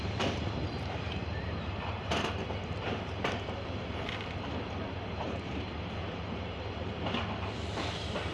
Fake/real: fake